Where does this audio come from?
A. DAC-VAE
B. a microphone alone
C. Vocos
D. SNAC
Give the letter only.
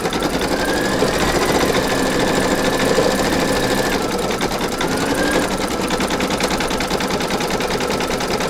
B